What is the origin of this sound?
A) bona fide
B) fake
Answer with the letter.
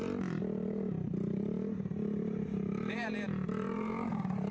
B